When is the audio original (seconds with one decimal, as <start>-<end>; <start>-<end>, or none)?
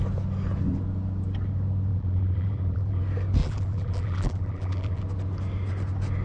0.0-1.9; 3.0-3.4; 5.0-6.2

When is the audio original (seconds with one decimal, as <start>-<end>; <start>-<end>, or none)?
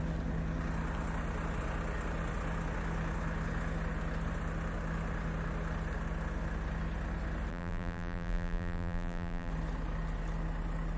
0.0-7.5; 9.5-11.0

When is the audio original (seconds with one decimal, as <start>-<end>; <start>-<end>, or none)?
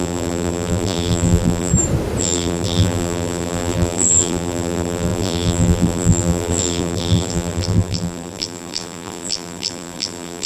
1.7-2.2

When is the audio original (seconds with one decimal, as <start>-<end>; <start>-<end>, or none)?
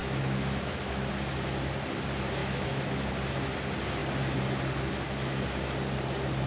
1.1-2.4; 3.1-6.5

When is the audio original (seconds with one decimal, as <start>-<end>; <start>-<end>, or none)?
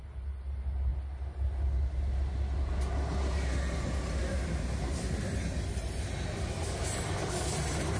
0.0-8.0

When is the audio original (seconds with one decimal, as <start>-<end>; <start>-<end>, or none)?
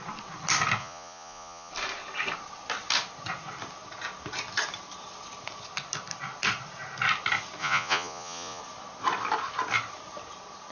0.0-0.8; 1.7-7.6; 8.6-10.7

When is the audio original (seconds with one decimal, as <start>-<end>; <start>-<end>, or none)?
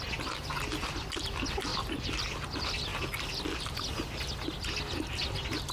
0.0-5.7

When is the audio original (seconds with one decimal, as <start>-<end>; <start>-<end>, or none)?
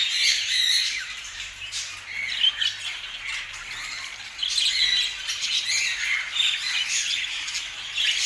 1.7-8.3